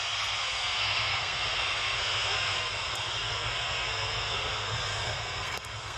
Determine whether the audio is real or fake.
fake